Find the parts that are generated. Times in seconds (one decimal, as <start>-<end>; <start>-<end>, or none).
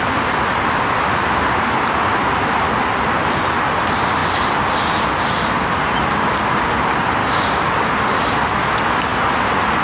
7.2-7.7